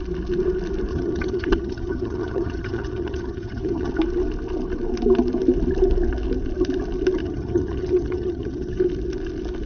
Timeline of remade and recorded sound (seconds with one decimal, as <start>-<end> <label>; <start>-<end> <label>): 0.0-0.9 recorded; 0.9-3.9 remade; 3.9-7.2 recorded; 7.2-8.8 remade; 8.8-9.7 recorded